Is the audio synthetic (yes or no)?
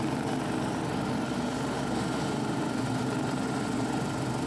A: no